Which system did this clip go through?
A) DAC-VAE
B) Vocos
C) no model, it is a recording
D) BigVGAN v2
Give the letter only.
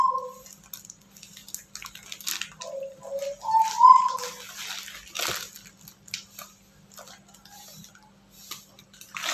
C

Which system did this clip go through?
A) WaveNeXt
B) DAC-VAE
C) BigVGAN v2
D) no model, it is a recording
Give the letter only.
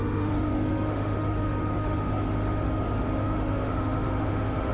B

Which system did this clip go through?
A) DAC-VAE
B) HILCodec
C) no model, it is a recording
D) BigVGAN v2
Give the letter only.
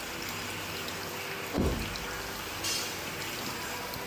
C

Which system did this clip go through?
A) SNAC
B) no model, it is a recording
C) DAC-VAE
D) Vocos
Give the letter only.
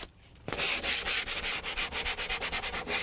B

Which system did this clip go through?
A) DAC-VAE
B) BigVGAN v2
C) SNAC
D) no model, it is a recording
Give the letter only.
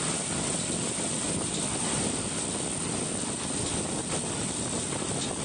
D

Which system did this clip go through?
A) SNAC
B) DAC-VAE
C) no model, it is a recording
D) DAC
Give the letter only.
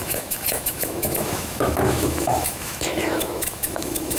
B